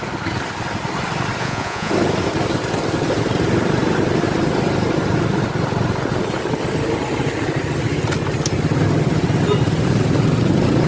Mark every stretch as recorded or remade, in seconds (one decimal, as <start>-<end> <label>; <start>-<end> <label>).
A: 0.0-1.4 recorded; 1.4-1.9 remade; 1.9-10.9 recorded